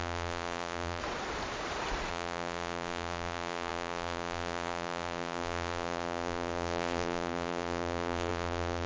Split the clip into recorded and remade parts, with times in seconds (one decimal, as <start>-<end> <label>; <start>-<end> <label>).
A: 0.0-1.0 remade; 1.0-2.1 recorded; 2.1-8.9 remade